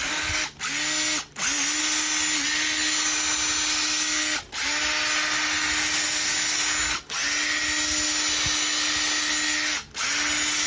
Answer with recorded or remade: recorded